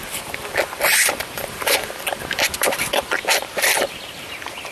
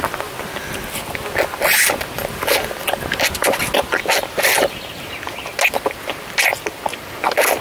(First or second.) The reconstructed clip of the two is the first